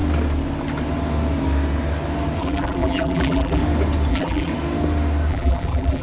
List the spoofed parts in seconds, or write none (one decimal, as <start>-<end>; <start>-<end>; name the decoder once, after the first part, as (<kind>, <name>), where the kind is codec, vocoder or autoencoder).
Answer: 2.4-3.6 (vocoder, BigVGAN v2); 4.1-4.5; 5.3-6.0